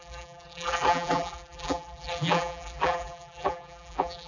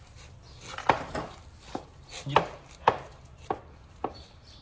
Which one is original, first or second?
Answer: second